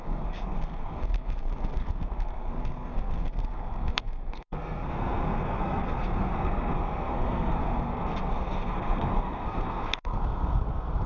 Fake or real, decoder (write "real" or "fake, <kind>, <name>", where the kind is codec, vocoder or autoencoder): fake, codec, SNAC